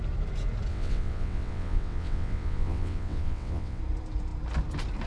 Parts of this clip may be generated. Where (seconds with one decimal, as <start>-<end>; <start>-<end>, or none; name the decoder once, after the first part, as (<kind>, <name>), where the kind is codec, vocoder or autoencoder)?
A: 0.7-3.8 (vocoder, WaveNeXt)